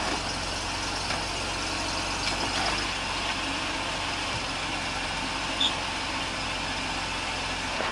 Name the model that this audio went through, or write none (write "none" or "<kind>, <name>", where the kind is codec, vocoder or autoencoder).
none